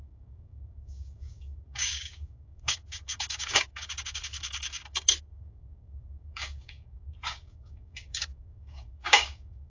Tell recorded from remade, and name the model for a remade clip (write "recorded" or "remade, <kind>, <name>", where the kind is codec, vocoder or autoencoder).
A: remade, codec, DAC